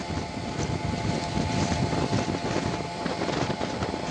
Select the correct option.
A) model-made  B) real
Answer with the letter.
B